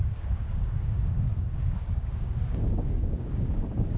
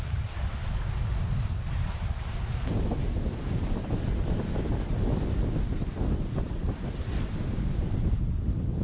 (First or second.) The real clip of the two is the second